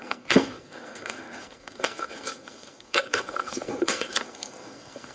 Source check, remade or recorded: remade